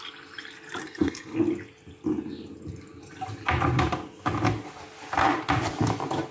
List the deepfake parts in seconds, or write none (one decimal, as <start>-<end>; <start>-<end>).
0.8-1.4